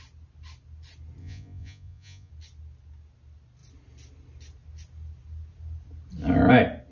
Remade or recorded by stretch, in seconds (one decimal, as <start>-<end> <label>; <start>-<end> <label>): 0.0-1.2 recorded; 1.2-2.3 remade; 2.3-6.9 recorded